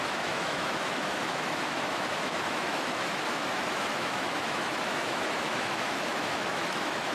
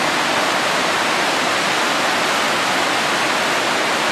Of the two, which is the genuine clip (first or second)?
second